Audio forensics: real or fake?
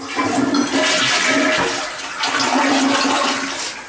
real